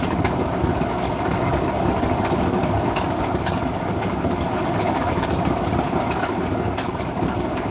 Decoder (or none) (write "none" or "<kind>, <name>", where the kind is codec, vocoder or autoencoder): codec, DAC